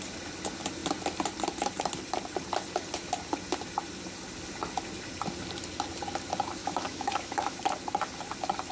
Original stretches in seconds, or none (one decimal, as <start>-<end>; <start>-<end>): 0.0-6.6; 7.6-8.7

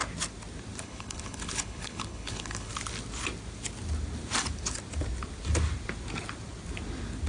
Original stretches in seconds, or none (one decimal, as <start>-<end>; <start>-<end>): 0.0-0.8; 2.7-7.3

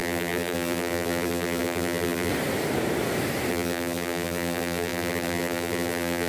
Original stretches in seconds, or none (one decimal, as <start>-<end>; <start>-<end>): 2.3-3.5

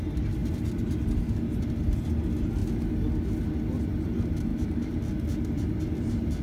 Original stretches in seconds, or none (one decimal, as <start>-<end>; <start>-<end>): 0.0-4.5; 5.0-6.4

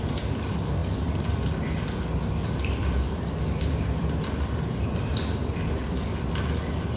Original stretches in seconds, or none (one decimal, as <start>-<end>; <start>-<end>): 0.0-2.4; 4.1-7.0

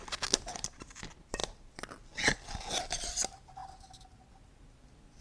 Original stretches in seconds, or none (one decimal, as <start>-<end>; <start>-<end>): 0.0-5.2